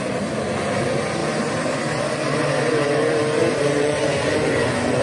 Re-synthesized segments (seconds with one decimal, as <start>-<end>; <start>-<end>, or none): 1.2-1.8; 3.4-4.0